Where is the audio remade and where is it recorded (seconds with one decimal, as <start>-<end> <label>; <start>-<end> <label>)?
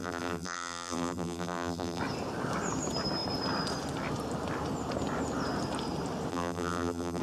0.0-2.0 remade; 2.0-6.3 recorded; 6.3-7.2 remade